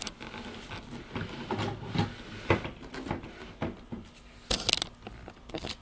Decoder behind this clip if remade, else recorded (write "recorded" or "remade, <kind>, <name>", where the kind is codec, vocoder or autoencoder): recorded